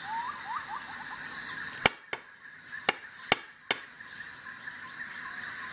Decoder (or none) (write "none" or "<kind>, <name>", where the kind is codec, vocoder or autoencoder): none